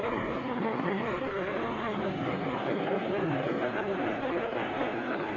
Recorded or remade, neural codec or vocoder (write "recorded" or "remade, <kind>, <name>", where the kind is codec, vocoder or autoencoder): remade, codec, SNAC